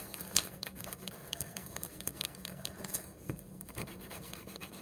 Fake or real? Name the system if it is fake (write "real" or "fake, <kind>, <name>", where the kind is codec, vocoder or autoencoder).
fake, codec, SNAC